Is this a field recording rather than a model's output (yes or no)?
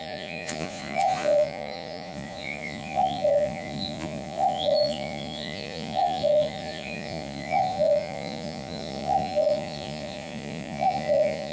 no